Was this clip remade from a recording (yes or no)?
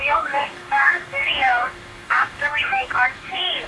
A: yes